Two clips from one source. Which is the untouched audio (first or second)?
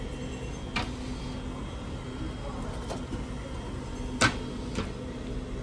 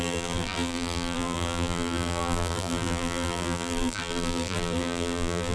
first